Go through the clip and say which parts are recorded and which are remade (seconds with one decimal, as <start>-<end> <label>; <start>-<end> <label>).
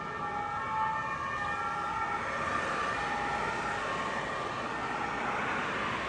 0.0-6.1 recorded